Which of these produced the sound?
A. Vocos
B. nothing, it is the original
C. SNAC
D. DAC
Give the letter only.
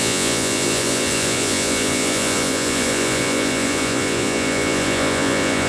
A